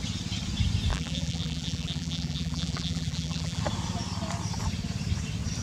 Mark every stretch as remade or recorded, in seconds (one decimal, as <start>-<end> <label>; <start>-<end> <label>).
0.0-0.9 recorded; 0.9-3.6 remade; 3.6-5.6 recorded